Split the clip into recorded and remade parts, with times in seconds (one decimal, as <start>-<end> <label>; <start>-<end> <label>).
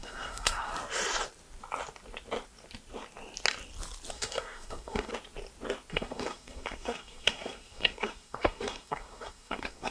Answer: 0.0-0.7 remade; 0.7-4.1 recorded; 4.1-5.1 remade; 5.1-5.9 recorded; 5.9-9.9 remade